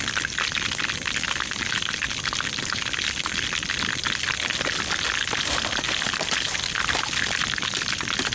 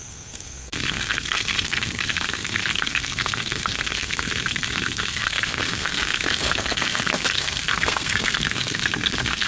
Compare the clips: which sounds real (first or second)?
first